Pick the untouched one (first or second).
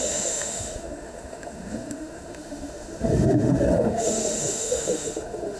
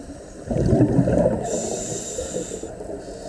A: second